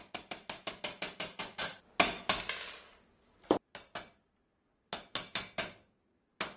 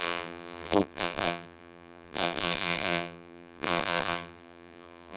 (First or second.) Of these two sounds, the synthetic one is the second